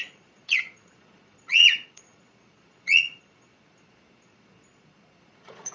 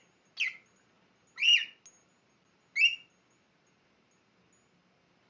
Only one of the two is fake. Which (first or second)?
first